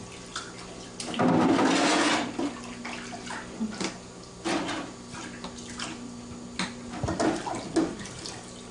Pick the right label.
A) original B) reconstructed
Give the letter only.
A